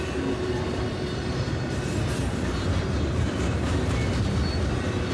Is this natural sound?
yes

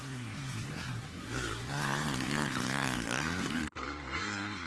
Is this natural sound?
no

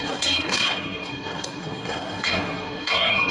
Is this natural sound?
no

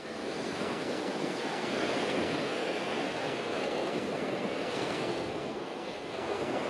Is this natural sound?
no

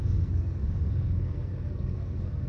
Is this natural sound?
no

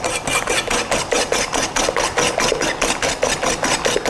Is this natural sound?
yes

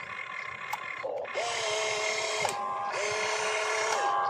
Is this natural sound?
yes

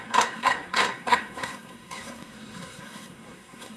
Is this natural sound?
no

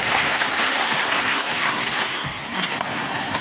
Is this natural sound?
no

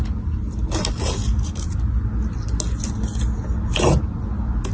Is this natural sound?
yes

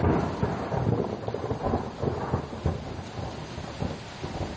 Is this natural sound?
yes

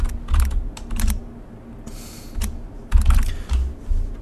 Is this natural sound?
yes